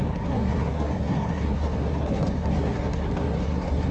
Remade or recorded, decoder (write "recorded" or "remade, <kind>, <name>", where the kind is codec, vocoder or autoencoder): remade, codec, SNAC